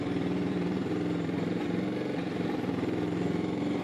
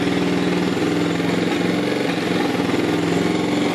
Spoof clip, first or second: first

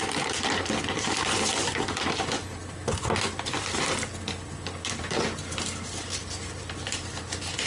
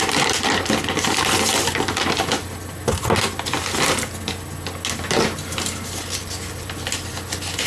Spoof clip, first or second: first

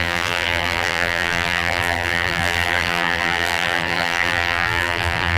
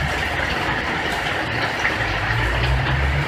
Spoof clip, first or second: first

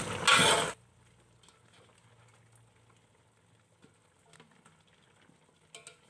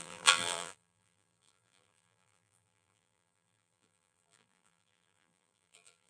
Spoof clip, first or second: second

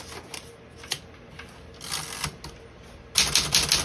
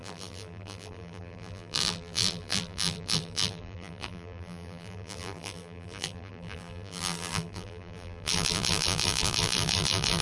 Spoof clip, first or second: second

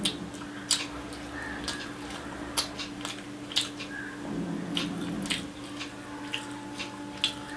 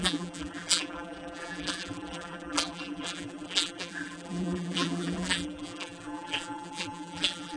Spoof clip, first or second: second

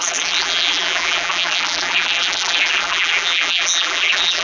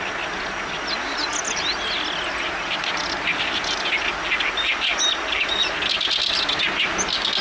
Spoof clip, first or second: first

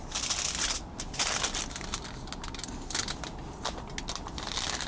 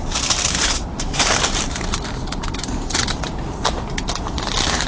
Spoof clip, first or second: second